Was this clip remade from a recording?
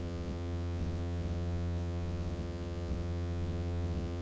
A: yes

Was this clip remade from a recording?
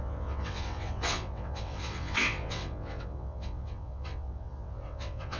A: yes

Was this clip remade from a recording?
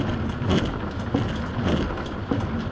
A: no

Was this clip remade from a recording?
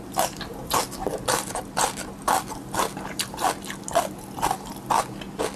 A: no